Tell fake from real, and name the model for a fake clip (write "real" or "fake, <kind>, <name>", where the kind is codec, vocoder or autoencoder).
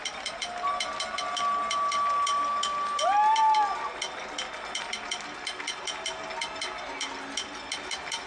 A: real